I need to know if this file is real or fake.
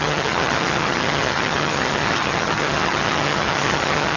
fake